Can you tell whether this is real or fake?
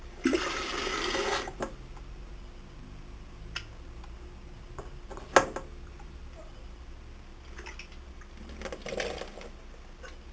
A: real